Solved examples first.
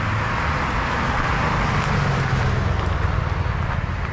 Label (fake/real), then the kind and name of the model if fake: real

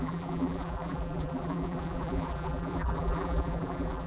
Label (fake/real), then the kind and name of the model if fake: fake, vocoder, BigVGAN v2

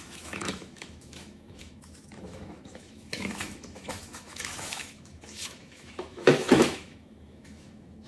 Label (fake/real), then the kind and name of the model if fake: fake, autoencoder, DAC-VAE